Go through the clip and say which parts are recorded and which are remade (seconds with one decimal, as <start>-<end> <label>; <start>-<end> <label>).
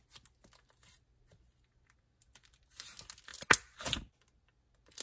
0.0-5.0 recorded